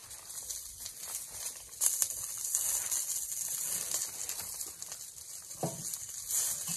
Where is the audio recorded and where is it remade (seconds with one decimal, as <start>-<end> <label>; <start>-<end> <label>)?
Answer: 0.0-6.8 recorded